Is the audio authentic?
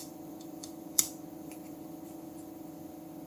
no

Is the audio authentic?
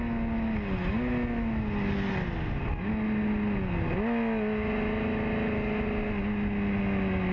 yes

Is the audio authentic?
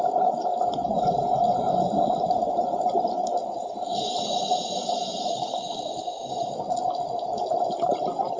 yes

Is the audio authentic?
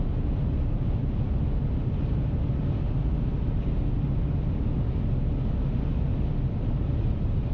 yes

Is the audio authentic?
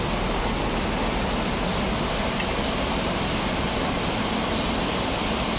yes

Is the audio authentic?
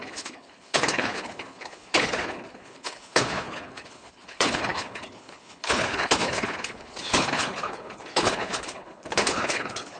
no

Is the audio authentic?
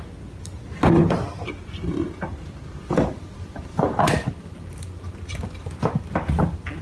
yes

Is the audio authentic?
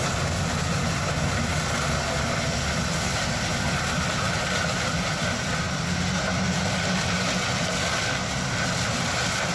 yes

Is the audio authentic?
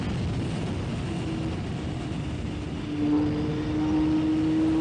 yes